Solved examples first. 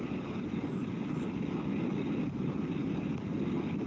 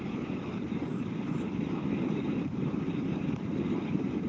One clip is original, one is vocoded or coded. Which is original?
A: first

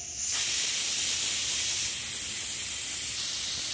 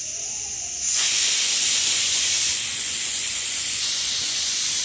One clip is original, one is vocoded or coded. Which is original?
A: first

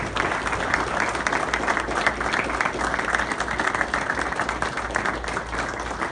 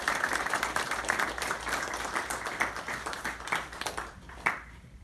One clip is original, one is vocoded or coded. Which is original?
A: first